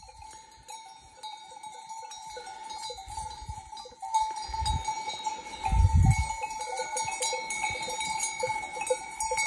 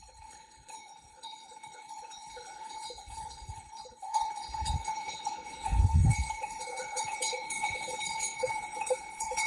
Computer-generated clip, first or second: second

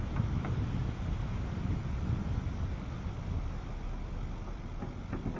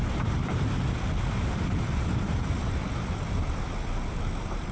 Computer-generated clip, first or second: second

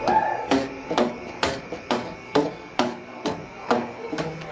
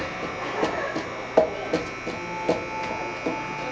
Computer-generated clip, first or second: first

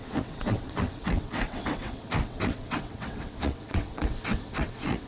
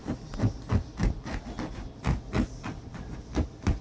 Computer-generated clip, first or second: first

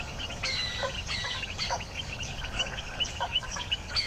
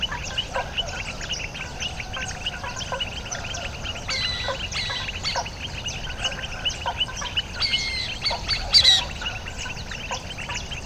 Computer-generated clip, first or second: first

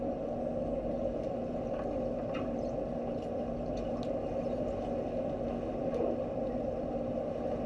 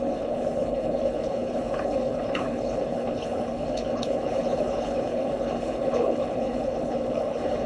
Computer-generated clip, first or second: second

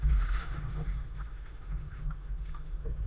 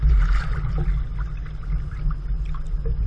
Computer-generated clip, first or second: first